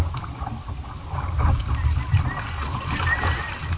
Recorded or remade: recorded